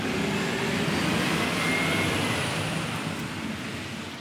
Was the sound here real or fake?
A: real